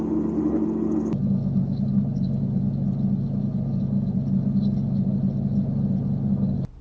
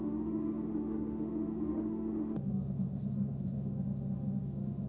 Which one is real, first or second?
first